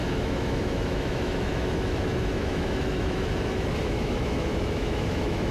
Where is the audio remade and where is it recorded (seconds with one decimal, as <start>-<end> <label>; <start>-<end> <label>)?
0.0-5.5 remade